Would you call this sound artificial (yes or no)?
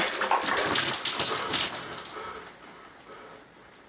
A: no